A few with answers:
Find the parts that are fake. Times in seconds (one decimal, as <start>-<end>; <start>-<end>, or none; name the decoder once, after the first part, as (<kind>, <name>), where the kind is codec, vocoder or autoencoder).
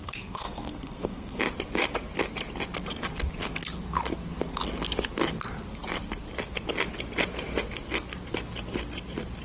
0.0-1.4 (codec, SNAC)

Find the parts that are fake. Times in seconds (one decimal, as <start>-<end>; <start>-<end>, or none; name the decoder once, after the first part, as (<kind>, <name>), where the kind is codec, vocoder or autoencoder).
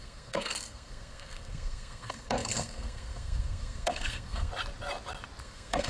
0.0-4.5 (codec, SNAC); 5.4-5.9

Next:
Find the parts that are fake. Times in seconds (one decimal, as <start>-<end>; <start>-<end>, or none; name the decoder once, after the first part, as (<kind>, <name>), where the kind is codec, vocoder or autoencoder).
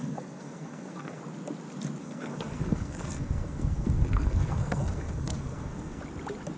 0.0-1.2 (codec, SNAC); 2.0-6.0